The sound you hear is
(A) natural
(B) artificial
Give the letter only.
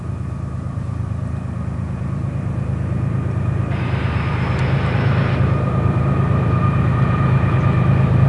B